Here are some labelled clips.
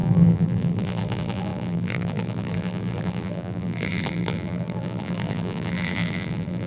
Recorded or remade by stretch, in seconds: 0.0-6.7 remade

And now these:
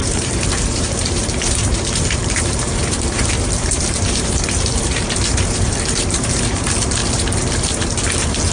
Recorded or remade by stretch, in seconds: 0.0-7.0 remade; 7.0-8.1 recorded; 8.1-8.5 remade

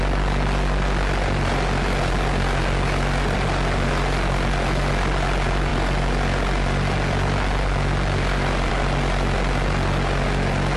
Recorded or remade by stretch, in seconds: 0.0-10.8 recorded

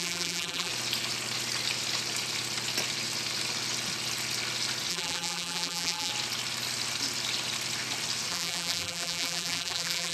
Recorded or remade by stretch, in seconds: 0.0-0.7 remade; 0.7-4.9 recorded; 4.9-6.1 remade; 6.1-8.3 recorded; 8.3-10.1 remade

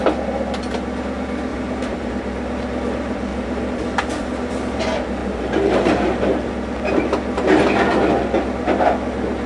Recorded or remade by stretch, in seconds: 0.0-1.5 recorded; 1.5-2.1 remade; 2.1-3.3 recorded; 3.3-4.8 remade; 4.8-5.2 recorded; 5.2-6.2 remade; 6.2-9.5 recorded

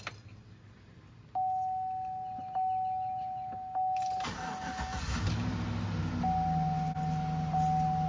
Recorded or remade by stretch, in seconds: 0.0-4.9 recorded; 4.9-6.0 remade; 6.0-8.1 recorded